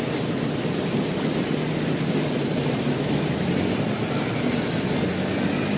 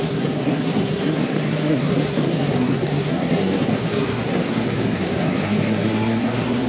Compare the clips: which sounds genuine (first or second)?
first